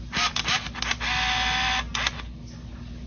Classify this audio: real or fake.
real